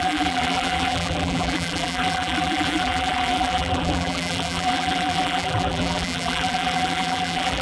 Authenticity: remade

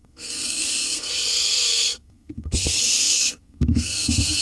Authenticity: remade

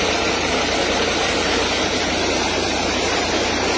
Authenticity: remade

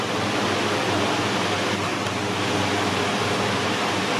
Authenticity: recorded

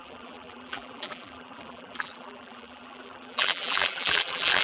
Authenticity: remade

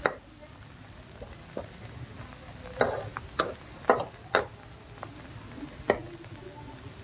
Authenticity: recorded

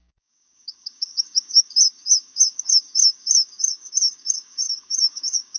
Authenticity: remade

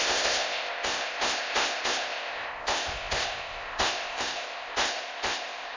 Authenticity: remade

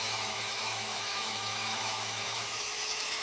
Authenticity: remade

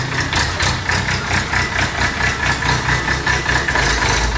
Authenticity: recorded